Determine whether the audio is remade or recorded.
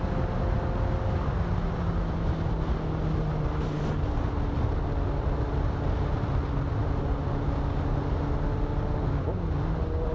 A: recorded